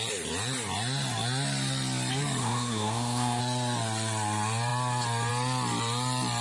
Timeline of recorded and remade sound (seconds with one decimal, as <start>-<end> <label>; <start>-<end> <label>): 0.0-2.4 recorded; 2.4-3.4 remade; 3.4-6.4 recorded